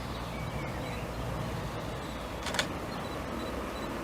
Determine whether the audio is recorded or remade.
recorded